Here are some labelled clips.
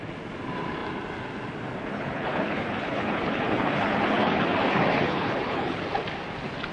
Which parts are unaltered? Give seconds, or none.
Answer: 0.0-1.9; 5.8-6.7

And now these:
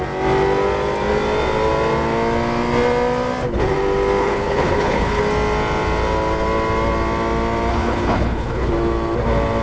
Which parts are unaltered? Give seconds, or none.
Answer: 0.0-4.2; 5.2-7.7; 8.7-9.6

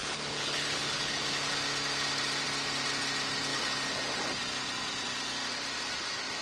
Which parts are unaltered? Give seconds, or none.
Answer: 1.2-6.4